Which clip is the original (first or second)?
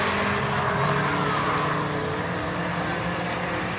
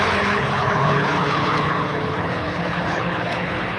first